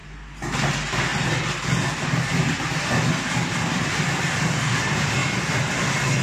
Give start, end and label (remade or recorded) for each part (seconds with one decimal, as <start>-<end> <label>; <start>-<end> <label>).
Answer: 0.0-0.7 recorded; 0.7-5.2 remade; 5.2-6.2 recorded